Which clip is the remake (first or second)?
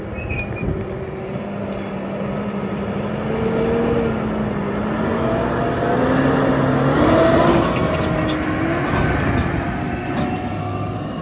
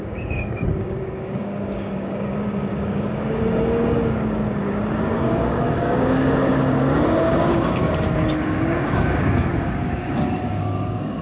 second